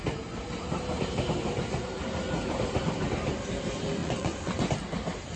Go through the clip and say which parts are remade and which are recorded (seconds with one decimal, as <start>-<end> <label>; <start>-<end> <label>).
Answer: 0.0-4.0 recorded; 4.0-4.7 remade; 4.7-5.4 recorded